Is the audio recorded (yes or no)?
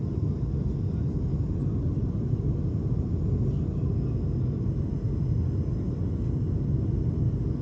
yes